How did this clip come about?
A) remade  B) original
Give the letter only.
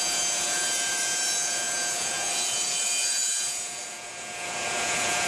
A